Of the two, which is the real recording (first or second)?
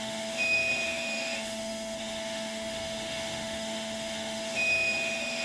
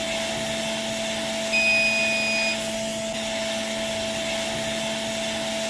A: second